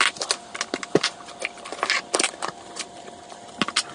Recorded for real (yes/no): yes